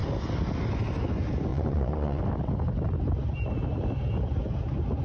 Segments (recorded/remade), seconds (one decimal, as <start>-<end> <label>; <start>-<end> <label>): 0.0-1.5 recorded; 1.5-2.2 remade; 2.2-5.0 recorded